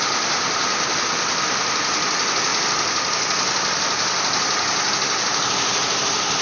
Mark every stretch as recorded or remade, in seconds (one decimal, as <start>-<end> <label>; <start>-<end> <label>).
0.0-6.4 recorded